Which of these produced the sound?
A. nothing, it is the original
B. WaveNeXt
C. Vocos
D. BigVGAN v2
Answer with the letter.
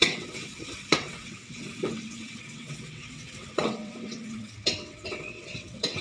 B